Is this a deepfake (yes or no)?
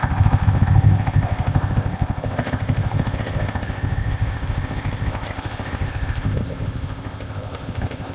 yes